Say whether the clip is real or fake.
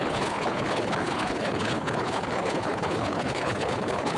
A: fake